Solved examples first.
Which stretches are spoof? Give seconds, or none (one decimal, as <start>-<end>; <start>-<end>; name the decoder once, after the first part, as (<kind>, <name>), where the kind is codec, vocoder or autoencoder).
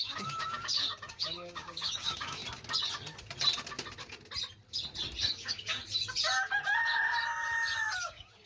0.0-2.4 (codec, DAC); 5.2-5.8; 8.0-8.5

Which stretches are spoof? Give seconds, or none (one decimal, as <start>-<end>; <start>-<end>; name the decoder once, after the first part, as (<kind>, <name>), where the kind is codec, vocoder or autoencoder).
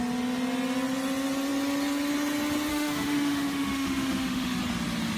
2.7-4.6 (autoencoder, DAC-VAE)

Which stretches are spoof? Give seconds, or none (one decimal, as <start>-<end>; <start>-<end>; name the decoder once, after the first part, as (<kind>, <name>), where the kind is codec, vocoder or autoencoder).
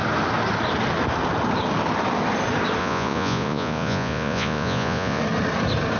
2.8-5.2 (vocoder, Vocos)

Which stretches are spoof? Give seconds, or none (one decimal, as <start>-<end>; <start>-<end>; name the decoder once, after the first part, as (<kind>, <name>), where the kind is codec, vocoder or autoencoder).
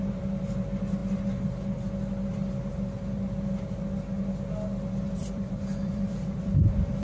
5.2-7.0 (vocoder, BigVGAN v2)